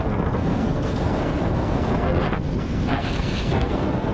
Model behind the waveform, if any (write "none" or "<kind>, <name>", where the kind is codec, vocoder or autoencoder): codec, SNAC